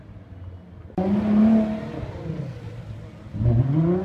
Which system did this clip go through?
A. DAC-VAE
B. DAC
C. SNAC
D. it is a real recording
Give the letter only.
D